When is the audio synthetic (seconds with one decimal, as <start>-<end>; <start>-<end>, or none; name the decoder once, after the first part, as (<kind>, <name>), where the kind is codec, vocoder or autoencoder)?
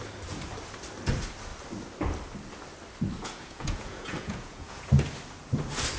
3.2-4.9 (vocoder, Vocos)